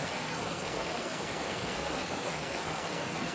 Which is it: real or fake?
fake